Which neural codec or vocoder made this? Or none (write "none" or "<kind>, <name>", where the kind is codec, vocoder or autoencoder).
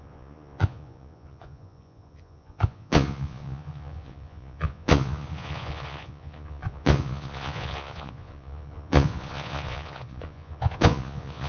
vocoder, Vocos